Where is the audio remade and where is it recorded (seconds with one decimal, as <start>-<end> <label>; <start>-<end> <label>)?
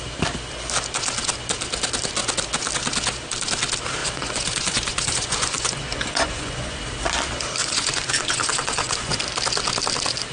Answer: 0.0-4.0 recorded; 4.0-6.8 remade; 6.8-7.6 recorded; 7.6-9.1 remade; 9.1-10.3 recorded